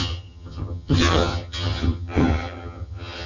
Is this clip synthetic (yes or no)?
yes